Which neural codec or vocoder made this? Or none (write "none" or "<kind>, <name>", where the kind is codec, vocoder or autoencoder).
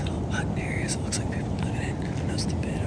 none